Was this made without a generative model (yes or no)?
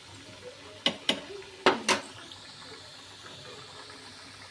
yes